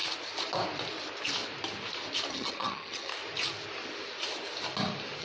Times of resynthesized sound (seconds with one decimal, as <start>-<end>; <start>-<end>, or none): 2.3-3.1